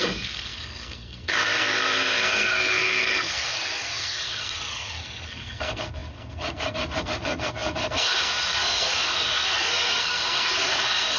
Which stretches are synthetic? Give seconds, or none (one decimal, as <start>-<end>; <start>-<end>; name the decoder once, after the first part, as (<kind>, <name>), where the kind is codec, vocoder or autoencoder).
0.0-11.2 (codec, SNAC)